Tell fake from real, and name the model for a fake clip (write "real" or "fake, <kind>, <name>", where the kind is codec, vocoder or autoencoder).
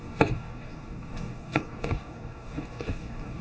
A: fake, codec, DAC